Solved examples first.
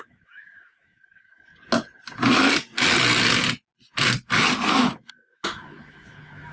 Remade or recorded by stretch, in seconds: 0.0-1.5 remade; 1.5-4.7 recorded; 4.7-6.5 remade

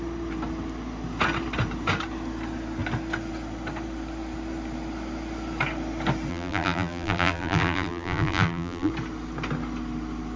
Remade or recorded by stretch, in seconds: 0.0-6.3 recorded; 6.3-8.9 remade; 8.9-10.4 recorded

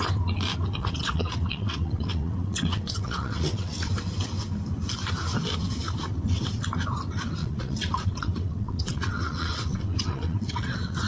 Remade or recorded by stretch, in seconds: 0.0-0.8 recorded; 0.8-3.9 remade; 3.9-7.4 recorded; 7.4-11.1 remade

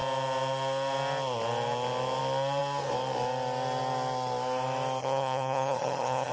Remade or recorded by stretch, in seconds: 0.0-5.0 recorded; 5.0-6.3 remade